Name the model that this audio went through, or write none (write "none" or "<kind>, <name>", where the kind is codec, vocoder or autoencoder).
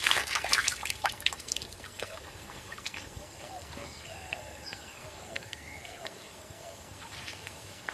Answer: codec, SNAC